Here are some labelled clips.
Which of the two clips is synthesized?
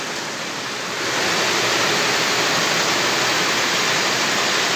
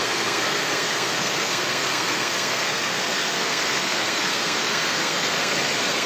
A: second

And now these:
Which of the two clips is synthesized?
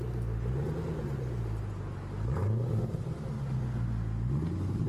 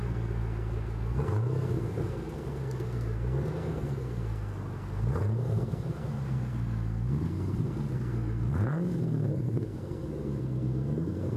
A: second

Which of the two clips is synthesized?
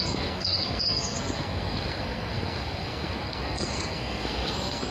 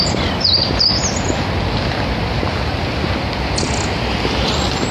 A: first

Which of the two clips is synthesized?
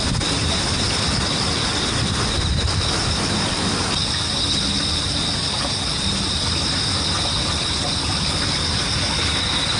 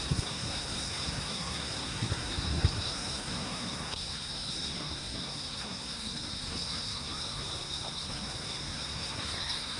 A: second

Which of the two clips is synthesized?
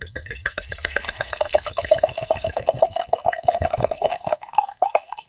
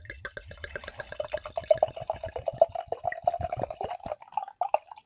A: first